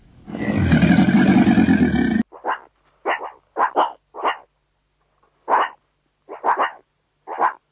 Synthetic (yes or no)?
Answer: no